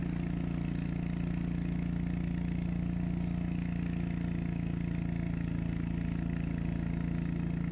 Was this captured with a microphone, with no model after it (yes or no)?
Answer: yes